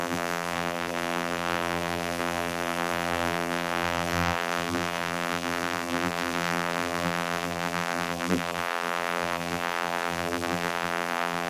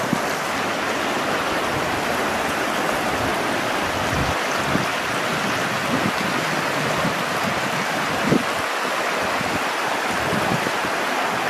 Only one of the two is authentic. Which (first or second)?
second